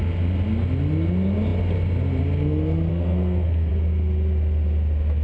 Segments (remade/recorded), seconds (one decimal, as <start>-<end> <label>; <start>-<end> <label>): 0.0-2.9 recorded; 2.9-3.7 remade; 3.7-5.2 recorded